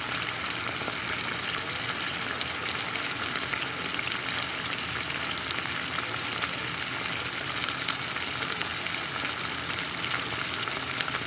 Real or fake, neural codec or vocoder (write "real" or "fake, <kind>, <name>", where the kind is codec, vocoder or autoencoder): real